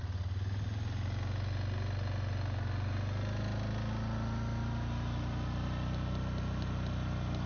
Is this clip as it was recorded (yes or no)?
yes